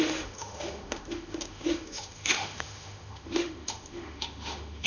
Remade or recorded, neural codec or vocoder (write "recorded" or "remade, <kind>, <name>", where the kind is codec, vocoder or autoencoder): remade, autoencoder, DAC-VAE